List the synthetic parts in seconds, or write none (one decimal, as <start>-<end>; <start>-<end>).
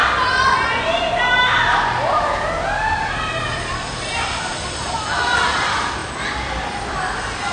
3.7-7.5